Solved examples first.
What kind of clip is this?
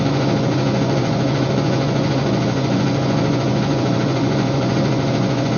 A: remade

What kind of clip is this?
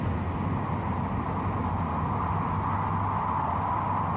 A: recorded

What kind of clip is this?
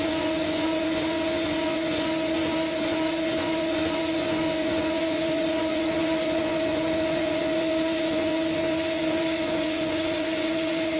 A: remade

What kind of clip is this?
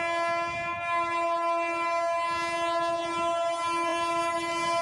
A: recorded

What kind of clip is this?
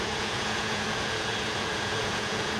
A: remade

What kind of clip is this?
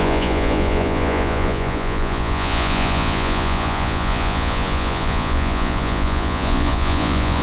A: remade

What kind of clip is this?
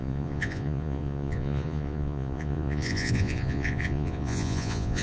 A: remade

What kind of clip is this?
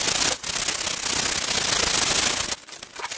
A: recorded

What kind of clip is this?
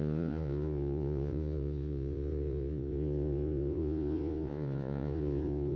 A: remade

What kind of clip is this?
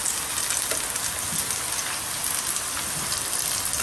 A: recorded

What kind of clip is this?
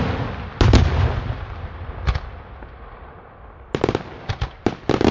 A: recorded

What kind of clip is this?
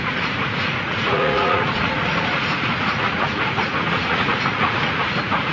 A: remade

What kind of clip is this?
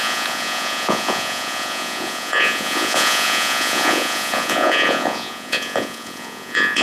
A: remade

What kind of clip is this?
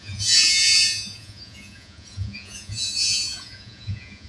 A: remade